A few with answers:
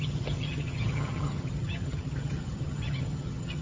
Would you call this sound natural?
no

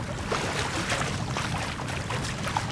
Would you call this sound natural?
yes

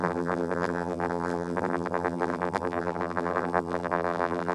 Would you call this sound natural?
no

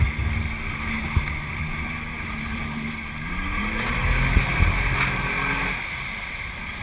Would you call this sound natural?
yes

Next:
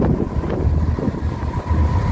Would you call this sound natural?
yes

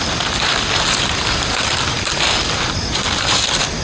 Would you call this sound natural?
yes